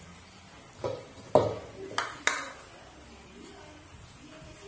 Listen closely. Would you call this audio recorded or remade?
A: recorded